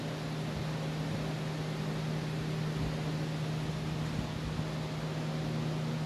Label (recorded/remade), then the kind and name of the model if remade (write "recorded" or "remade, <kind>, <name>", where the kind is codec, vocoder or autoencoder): recorded